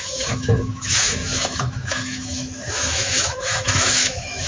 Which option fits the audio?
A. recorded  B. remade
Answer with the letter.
B